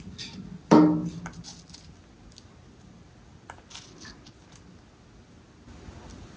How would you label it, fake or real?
real